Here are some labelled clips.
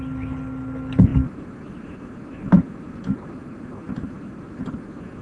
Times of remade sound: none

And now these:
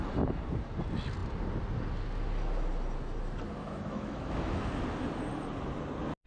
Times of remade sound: 3.6-4.7 (autoencoder, DAC-VAE)

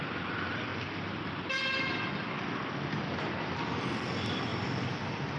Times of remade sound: none